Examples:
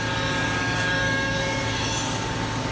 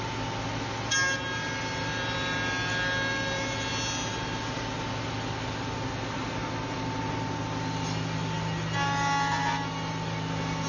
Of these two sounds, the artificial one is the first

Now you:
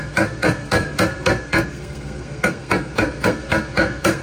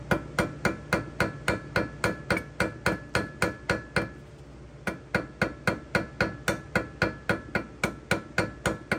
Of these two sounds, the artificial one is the first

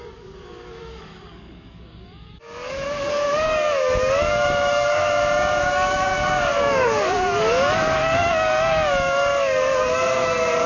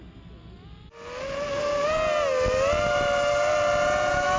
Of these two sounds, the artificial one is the first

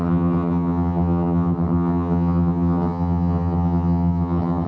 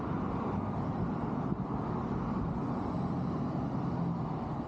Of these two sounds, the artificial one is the first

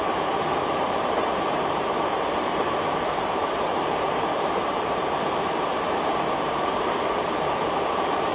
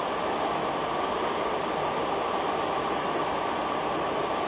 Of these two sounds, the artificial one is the first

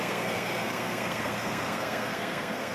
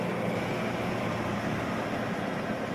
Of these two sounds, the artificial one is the first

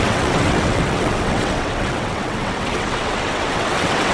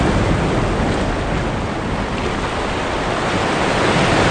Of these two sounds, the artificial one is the first